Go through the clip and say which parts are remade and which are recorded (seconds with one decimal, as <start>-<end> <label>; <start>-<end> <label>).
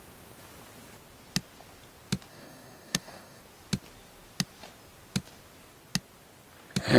0.0-2.3 recorded; 2.3-3.4 remade; 3.4-7.0 recorded